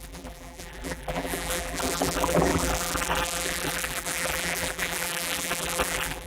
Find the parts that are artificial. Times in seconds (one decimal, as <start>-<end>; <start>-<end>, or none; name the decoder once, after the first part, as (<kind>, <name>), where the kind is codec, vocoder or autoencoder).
0.0-6.3 (vocoder, BigVGAN v2)